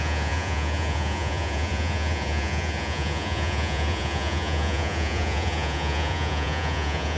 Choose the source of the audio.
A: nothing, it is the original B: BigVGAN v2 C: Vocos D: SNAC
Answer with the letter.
C